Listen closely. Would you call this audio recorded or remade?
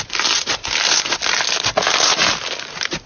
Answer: recorded